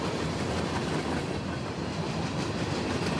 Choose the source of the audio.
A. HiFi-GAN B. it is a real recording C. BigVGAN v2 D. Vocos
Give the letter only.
B